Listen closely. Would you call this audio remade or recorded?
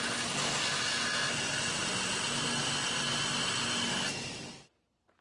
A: recorded